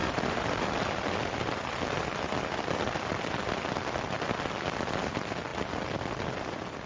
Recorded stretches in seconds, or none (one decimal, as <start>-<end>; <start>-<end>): 0.0-6.9